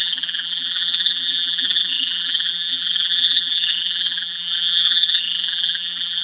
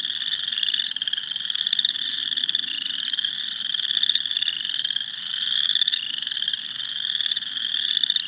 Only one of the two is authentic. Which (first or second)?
second